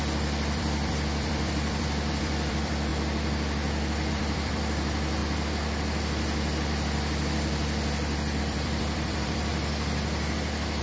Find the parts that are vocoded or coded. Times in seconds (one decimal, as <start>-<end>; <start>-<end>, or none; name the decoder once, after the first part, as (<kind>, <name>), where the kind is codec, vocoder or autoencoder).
0.0-2.9 (vocoder, BigVGAN v2); 4.1-5.2; 8.4-9.5